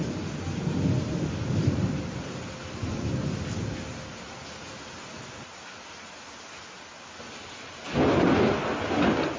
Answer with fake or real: real